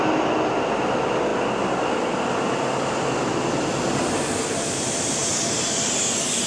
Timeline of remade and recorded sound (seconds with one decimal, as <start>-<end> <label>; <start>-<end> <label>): 0.0-6.5 recorded